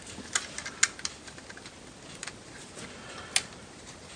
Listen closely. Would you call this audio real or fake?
real